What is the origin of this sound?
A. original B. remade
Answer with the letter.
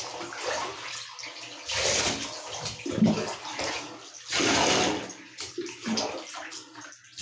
A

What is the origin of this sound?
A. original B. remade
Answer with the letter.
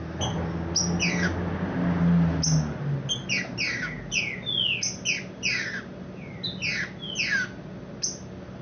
A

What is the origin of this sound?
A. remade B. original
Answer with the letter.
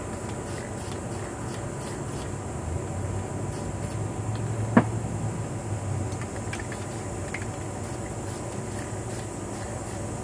B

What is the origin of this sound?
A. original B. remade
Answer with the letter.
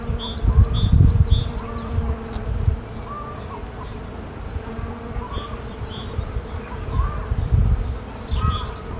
A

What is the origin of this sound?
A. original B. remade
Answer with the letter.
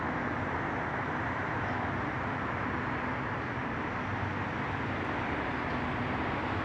A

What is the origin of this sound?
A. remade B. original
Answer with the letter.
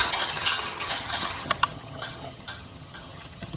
A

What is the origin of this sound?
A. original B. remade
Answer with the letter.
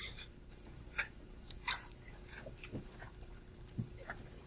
B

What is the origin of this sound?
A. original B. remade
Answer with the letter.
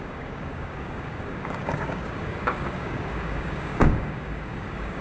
B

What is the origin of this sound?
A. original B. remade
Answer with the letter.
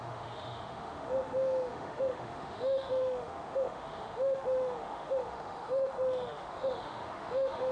B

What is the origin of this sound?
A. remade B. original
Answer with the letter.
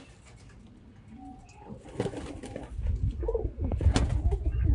B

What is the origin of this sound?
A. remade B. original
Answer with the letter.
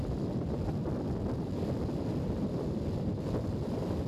B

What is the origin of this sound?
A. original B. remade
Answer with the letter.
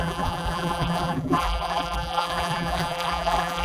B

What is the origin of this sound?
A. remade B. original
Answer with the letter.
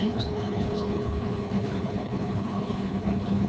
A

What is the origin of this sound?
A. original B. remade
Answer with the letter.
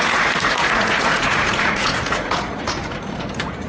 B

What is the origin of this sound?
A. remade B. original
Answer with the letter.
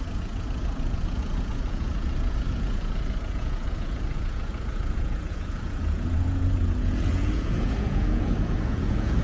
A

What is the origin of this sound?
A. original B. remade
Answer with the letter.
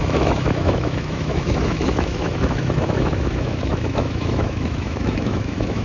B